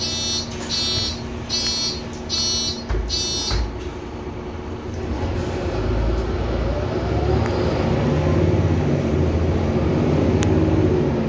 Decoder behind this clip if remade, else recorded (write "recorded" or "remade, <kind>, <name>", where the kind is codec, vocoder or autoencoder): recorded